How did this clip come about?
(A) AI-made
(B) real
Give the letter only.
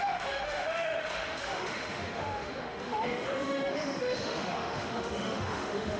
A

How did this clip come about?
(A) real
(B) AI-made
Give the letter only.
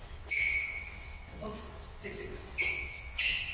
B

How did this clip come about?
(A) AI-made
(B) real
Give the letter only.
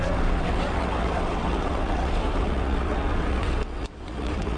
A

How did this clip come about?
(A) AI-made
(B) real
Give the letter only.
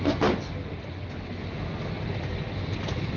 B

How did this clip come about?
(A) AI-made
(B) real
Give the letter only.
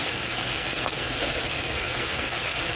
A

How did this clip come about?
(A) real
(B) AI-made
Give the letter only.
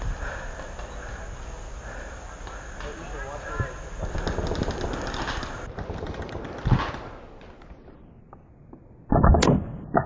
A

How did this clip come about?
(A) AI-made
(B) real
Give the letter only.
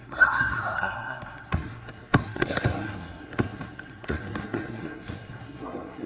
A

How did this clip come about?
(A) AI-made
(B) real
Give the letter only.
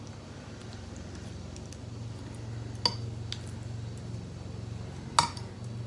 B